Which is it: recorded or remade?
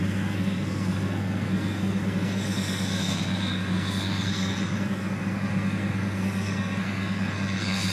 remade